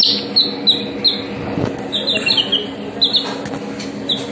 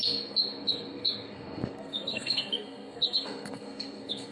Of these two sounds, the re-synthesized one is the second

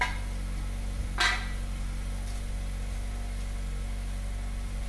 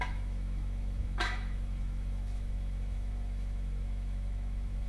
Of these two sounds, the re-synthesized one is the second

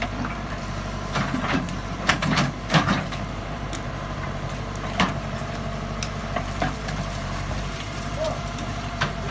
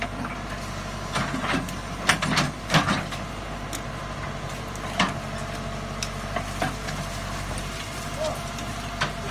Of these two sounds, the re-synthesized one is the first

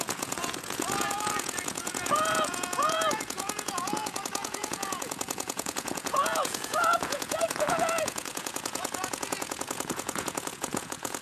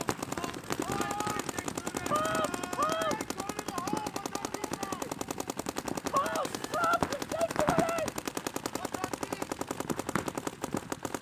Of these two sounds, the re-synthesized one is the first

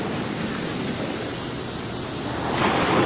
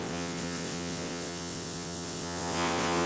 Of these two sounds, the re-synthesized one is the second